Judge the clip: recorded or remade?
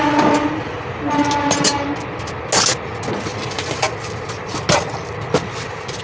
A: recorded